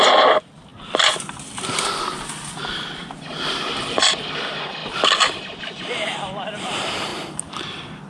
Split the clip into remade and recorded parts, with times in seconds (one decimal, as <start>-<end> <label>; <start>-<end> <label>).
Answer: 0.0-8.1 recorded